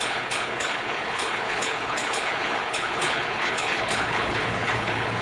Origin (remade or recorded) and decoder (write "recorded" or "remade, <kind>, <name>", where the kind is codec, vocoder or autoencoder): remade, codec, HILCodec